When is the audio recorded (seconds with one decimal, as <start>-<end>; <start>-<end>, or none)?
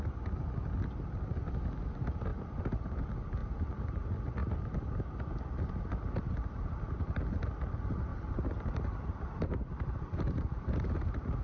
0.0-2.3; 2.9-3.4; 4.0-8.1; 10.9-11.4